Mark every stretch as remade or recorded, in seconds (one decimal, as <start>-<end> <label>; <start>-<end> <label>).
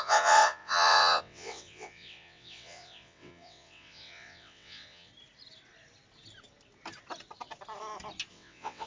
0.0-5.1 remade; 5.1-8.3 recorded; 8.3-8.9 remade